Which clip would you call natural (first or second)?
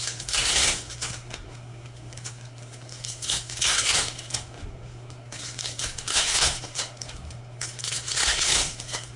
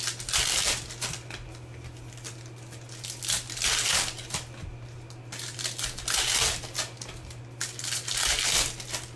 second